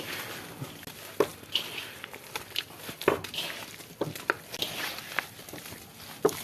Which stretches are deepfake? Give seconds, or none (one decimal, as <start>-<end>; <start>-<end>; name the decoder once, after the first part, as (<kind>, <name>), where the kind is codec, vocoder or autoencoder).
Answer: none